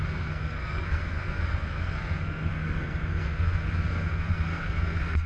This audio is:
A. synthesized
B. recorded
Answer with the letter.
A